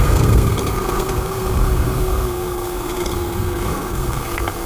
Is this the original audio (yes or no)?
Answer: no